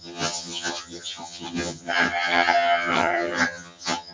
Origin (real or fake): fake